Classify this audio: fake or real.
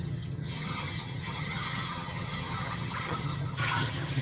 fake